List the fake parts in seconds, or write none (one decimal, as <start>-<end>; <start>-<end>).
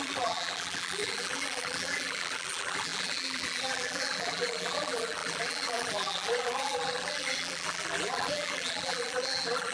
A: 0.0-9.7